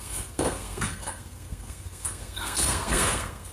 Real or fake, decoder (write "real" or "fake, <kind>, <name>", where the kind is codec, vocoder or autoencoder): fake, codec, SNAC